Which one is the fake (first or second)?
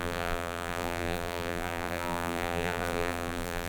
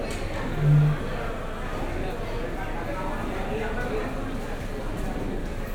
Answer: first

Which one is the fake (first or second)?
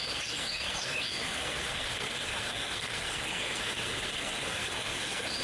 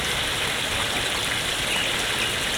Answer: first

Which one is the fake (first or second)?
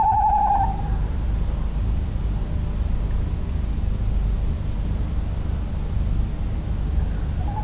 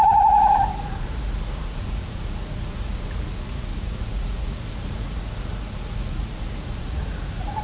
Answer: second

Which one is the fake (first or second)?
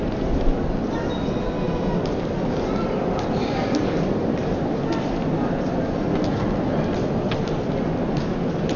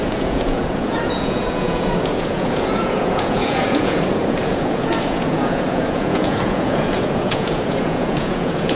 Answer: second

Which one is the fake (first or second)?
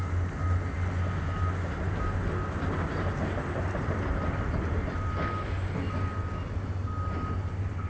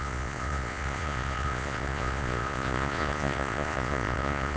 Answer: second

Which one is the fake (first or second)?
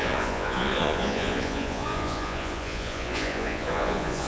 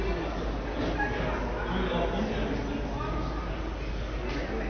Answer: first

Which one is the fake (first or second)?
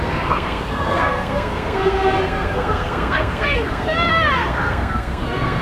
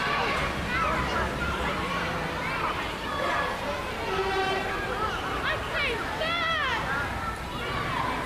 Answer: first